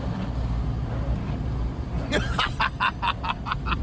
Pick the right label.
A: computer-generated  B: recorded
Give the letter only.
B